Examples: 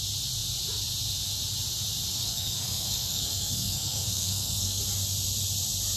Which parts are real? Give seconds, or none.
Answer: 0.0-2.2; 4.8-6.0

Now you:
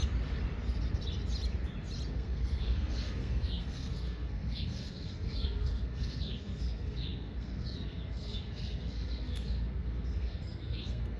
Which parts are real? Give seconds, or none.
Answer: 0.0-2.1

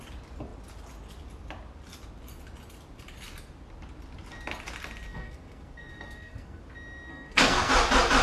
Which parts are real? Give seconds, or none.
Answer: 0.0-5.1; 6.6-7.1; 7.7-8.2

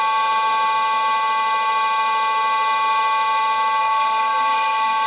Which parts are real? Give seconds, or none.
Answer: 0.0-3.8